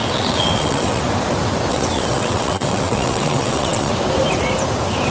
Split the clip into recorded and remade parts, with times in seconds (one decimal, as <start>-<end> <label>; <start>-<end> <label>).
0.0-1.0 remade; 1.0-1.7 recorded; 1.7-3.9 remade; 3.9-5.1 recorded